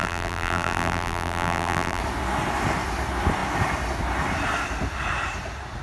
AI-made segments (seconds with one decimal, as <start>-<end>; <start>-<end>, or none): 0.0-2.0